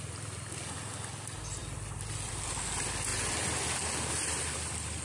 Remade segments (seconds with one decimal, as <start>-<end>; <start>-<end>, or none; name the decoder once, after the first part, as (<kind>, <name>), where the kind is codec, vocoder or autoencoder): none